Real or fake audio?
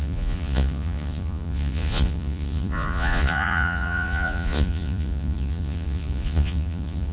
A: fake